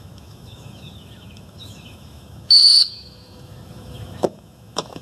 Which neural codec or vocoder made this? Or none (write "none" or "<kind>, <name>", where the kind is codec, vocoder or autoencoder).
autoencoder, DAC-VAE